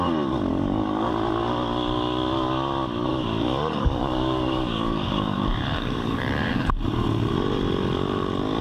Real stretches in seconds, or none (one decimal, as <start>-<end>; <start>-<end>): 0.0-0.5; 1.1-3.1; 6.7-8.6